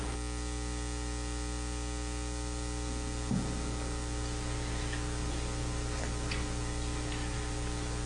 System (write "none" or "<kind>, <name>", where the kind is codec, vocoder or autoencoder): none